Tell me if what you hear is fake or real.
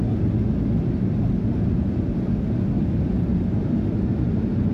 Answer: real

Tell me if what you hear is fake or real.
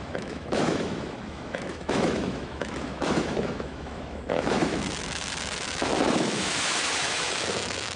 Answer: fake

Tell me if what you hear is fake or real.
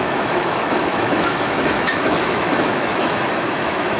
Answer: fake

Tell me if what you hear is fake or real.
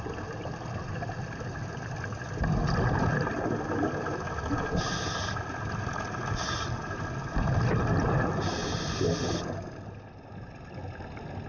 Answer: real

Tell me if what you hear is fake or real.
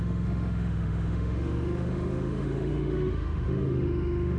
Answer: fake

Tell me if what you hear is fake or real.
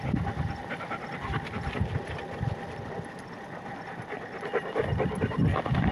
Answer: real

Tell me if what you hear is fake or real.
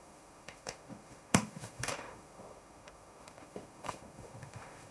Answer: fake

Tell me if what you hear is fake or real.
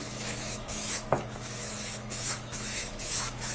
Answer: fake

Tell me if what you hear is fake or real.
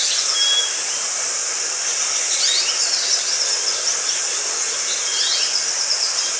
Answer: real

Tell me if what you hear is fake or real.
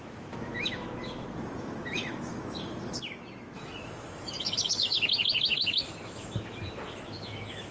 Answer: fake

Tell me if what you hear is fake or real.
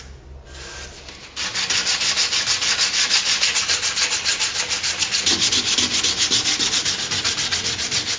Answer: real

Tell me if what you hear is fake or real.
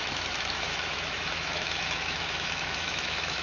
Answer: fake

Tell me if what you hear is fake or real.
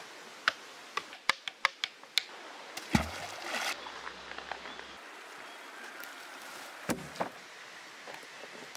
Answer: real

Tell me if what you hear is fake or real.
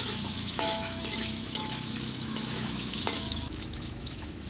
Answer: fake